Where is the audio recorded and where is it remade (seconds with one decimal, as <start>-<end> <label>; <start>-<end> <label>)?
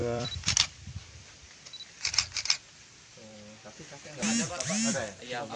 0.0-0.6 remade; 0.6-5.6 recorded